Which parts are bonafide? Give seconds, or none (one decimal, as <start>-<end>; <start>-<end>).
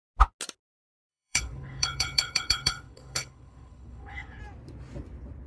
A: 0.0-1.1; 4.4-5.5